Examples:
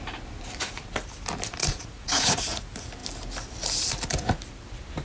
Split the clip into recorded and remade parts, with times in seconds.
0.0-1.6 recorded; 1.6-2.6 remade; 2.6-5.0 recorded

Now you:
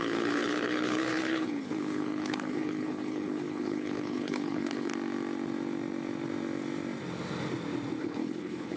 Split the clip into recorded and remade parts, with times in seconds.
0.0-4.9 remade; 4.9-8.0 recorded; 8.0-8.8 remade

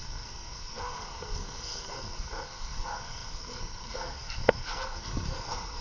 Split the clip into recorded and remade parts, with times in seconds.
0.0-5.8 remade

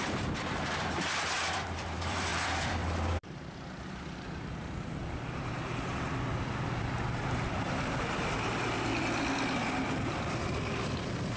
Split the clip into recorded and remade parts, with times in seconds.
0.0-11.4 remade

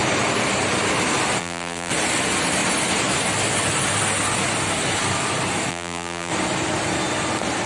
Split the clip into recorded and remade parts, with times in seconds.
0.0-1.4 recorded; 1.4-1.9 remade; 1.9-5.7 recorded; 5.7-6.3 remade; 6.3-7.7 recorded